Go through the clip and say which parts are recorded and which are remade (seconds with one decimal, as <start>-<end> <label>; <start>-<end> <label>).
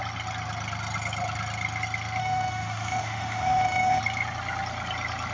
0.0-2.2 recorded; 2.2-4.0 remade; 4.0-5.3 recorded